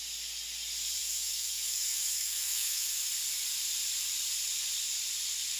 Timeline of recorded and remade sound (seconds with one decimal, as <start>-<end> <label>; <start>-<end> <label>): 0.0-1.0 recorded; 1.0-3.1 remade; 3.1-5.6 recorded